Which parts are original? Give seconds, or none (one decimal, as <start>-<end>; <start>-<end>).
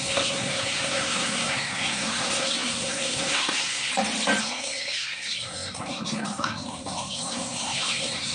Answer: 3.9-4.4